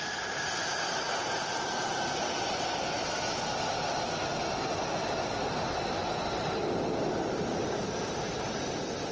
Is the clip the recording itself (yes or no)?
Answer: yes